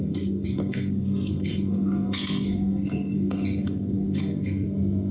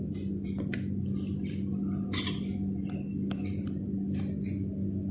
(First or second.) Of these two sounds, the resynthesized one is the first